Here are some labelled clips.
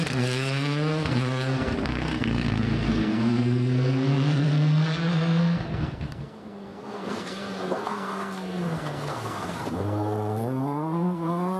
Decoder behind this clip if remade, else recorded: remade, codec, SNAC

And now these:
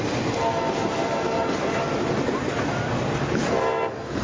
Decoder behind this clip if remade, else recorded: recorded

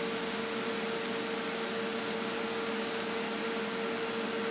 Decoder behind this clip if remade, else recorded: recorded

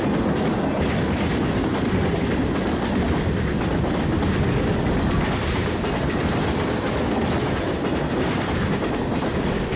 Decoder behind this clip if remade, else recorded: recorded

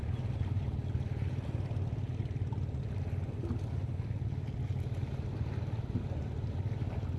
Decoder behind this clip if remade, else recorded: recorded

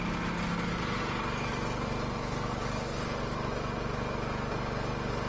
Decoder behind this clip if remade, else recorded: recorded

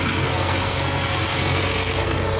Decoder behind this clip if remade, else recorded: remade, codec, SNAC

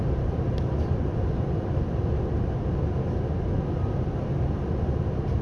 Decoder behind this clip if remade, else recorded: recorded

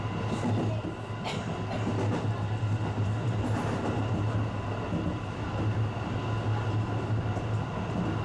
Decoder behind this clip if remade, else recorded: recorded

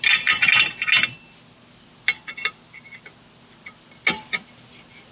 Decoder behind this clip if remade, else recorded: recorded